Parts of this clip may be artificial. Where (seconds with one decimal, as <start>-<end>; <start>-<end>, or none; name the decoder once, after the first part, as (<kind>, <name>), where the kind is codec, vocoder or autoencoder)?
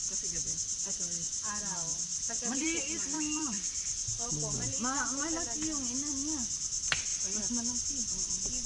2.1-4.3 (vocoder, BigVGAN v2)